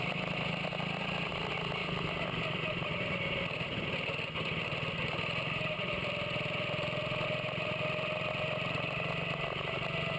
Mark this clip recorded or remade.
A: recorded